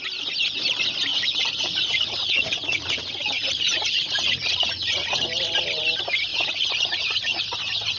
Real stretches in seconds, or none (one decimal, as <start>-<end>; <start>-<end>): 0.0-1.1; 5.4-6.3; 7.4-8.0